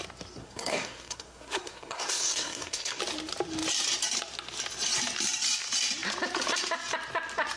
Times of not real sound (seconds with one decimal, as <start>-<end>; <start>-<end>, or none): 0.4-3.0